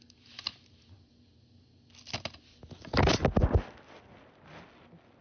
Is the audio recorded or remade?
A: recorded